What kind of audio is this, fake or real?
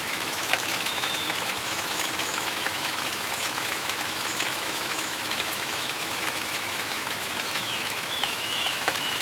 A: fake